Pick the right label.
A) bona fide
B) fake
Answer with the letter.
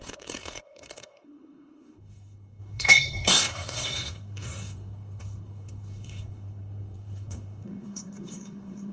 B